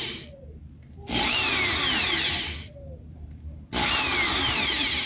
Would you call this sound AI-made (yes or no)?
yes